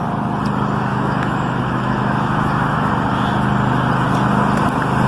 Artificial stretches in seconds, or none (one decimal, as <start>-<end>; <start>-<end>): 0.9-2.9